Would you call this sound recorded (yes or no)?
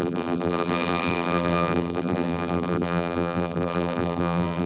no